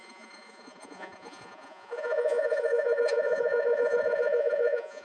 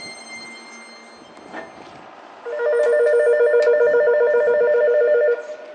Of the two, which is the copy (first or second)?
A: first